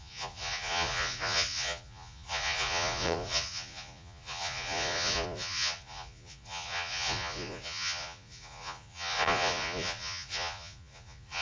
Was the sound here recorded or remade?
remade